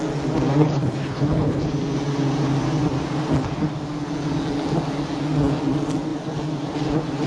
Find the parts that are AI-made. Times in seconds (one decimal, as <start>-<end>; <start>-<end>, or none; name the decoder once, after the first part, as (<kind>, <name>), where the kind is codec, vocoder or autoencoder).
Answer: 0.6-1.7 (codec, HILCodec)